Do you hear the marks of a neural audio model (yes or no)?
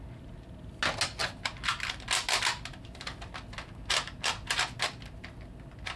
no